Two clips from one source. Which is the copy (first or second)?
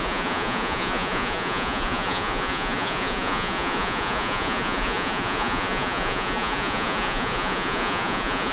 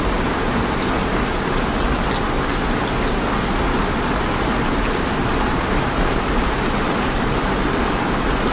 first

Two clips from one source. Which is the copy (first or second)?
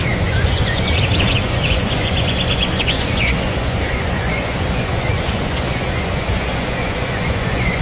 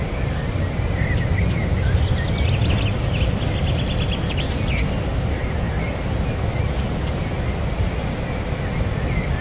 first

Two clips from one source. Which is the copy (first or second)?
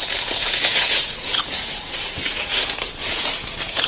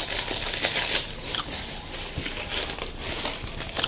first